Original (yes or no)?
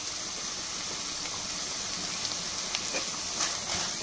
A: yes